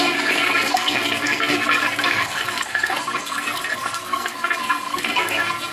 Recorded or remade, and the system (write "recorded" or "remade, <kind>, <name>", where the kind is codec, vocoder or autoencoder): remade, codec, SNAC